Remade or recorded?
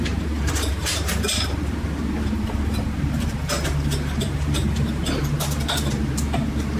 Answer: remade